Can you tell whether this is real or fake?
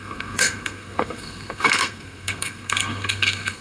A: fake